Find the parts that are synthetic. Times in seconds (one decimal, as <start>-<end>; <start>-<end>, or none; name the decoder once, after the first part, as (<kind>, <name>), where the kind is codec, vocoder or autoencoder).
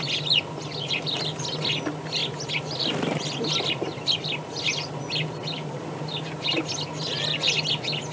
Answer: none